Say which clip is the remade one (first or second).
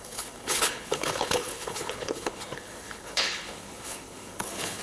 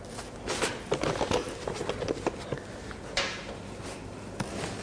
first